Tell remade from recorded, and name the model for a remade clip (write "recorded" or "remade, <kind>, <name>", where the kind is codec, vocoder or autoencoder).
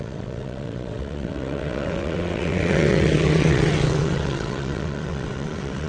remade, vocoder, WaveNeXt